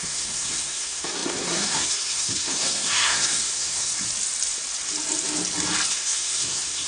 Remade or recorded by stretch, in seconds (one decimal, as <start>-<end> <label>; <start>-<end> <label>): 0.0-3.9 remade; 3.9-5.9 recorded; 5.9-6.9 remade